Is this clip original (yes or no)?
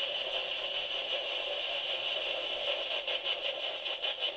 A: yes